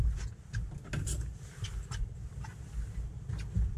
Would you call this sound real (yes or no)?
yes